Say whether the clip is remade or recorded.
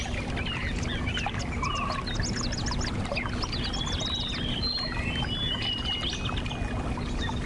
recorded